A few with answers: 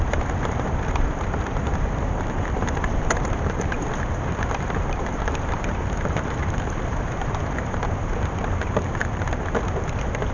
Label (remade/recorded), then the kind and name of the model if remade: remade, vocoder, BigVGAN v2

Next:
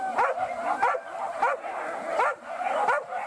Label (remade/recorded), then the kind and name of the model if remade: recorded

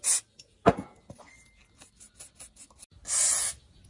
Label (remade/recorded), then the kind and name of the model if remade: recorded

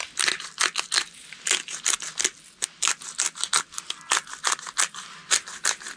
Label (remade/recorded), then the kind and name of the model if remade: recorded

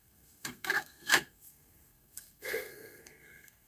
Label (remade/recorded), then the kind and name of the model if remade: remade, codec, SNAC